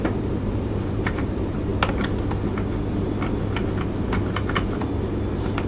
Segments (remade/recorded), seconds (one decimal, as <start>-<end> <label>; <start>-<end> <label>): 0.0-1.7 remade; 1.7-4.3 recorded; 4.3-5.7 remade